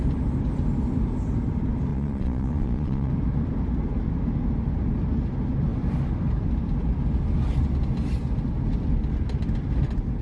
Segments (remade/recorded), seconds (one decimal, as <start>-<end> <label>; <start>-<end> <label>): 0.0-1.9 recorded; 1.9-3.1 remade; 3.1-10.2 recorded